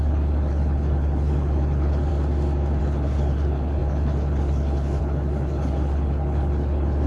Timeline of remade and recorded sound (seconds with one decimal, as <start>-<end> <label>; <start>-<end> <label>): 0.0-2.1 remade; 2.1-2.8 recorded; 2.8-7.1 remade